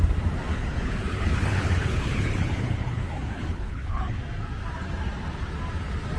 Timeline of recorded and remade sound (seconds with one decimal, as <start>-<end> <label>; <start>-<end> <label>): 0.0-0.5 recorded; 0.5-4.2 remade; 4.2-6.2 recorded